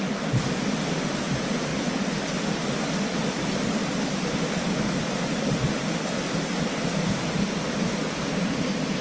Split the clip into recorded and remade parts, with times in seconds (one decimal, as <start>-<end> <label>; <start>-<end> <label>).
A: 0.0-1.7 remade; 1.7-6.3 recorded; 6.3-9.0 remade